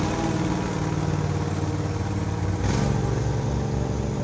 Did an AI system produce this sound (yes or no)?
no